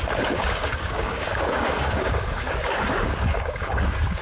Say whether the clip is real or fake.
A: fake